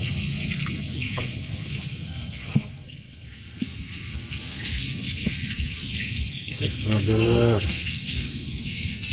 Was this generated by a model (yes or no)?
yes